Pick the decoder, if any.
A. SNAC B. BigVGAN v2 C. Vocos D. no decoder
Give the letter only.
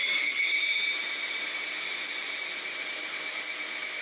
B